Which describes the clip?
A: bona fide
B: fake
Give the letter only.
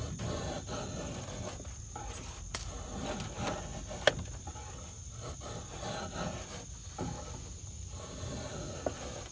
A